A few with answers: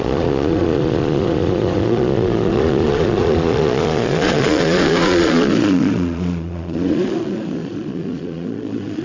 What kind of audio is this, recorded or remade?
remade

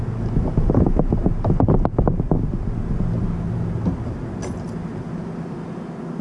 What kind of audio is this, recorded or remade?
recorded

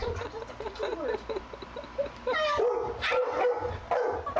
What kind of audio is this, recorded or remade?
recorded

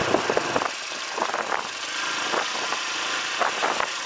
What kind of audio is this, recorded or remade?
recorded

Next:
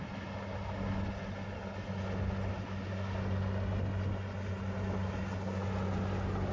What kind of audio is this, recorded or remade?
recorded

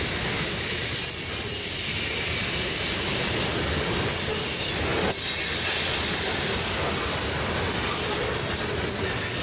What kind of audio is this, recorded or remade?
recorded